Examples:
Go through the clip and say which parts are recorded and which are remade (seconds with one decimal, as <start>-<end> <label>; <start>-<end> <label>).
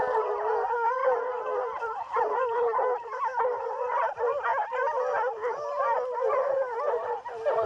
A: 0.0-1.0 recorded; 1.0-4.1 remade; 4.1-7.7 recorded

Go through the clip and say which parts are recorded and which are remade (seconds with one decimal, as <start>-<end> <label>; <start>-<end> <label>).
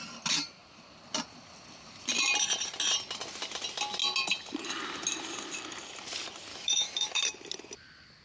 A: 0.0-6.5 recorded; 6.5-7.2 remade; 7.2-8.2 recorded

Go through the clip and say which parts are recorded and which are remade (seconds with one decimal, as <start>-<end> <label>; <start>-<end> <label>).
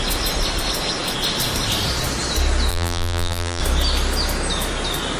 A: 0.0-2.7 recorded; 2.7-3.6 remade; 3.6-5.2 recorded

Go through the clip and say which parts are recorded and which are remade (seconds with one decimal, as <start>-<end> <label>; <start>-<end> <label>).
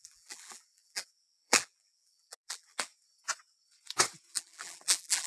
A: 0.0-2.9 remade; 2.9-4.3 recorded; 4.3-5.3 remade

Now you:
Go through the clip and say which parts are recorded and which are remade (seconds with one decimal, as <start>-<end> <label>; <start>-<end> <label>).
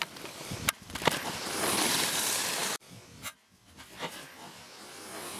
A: 0.0-2.6 recorded; 2.6-4.3 remade; 4.3-5.4 recorded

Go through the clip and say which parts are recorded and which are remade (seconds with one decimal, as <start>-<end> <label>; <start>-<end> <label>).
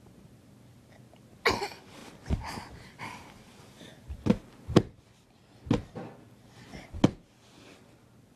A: 0.0-8.4 recorded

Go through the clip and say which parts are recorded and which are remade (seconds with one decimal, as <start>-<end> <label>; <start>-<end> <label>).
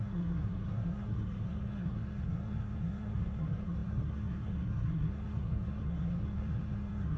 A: 0.0-7.2 remade